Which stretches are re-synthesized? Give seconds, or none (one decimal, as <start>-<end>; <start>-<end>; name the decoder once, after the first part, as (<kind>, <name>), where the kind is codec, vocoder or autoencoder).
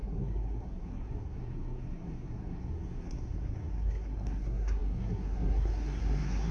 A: 0.0-6.5 (codec, SNAC)